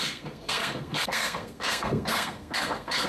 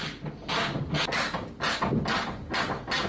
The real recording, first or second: second